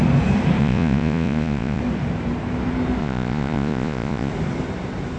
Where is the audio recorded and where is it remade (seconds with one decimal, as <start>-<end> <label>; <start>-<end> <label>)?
0.0-0.6 recorded; 0.6-1.8 remade; 1.8-3.0 recorded; 3.0-4.3 remade; 4.3-5.2 recorded